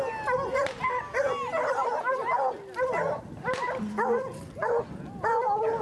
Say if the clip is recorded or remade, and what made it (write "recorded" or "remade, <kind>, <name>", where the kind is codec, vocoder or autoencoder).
recorded